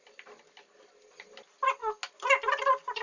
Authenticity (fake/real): real